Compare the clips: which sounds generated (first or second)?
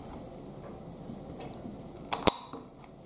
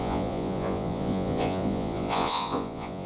second